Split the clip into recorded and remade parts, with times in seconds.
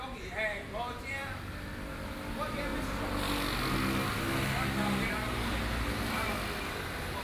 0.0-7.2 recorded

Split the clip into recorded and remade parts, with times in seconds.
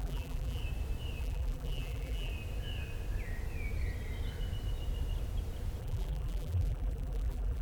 0.0-0.6 remade; 0.6-1.2 recorded; 1.2-2.3 remade; 2.3-5.8 recorded; 5.8-7.6 remade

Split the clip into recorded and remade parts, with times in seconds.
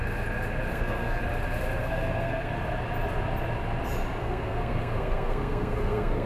0.0-0.7 recorded; 0.7-1.2 remade; 1.2-1.8 recorded; 1.8-2.5 remade; 2.5-4.2 recorded; 4.2-6.3 remade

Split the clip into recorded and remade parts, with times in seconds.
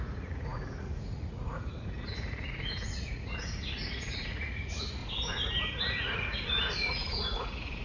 0.0-5.0 remade; 5.0-5.8 recorded; 5.8-7.8 remade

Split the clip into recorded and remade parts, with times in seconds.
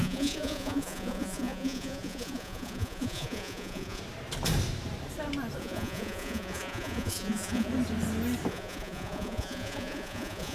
0.0-4.0 remade; 4.0-5.6 recorded; 5.6-7.7 remade; 7.7-8.5 recorded; 8.5-10.5 remade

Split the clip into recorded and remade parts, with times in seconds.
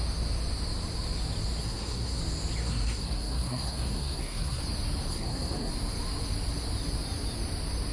0.0-1.6 recorded; 1.6-2.2 remade; 2.2-2.6 recorded; 2.6-4.6 remade; 4.6-5.1 recorded; 5.1-5.7 remade; 5.7-7.9 recorded